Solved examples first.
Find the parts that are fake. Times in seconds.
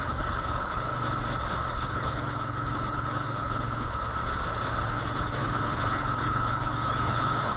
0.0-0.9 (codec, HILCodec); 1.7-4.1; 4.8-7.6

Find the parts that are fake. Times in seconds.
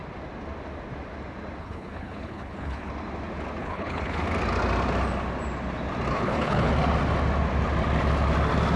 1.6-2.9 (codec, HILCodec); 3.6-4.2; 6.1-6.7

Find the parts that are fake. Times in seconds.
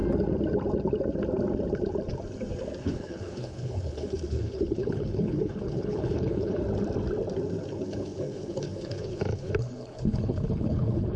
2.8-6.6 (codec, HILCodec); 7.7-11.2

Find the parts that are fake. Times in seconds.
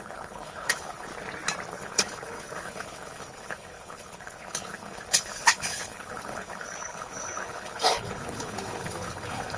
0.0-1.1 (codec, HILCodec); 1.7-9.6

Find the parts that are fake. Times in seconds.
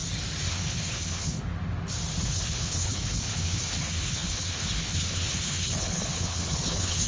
0.5-1.4 (codec, HILCodec); 2.2-7.1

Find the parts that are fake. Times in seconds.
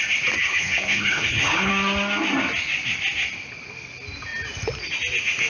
0.4-1.7 (codec, HILCodec)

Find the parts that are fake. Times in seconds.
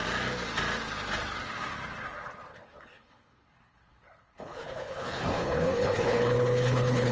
2.5-7.1 (codec, HILCodec)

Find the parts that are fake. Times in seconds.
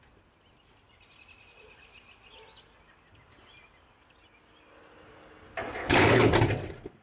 5.8-6.3 (codec, HILCodec)